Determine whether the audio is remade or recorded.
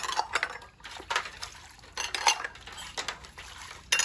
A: recorded